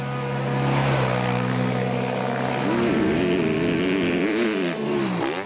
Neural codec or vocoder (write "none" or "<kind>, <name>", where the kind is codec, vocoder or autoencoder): none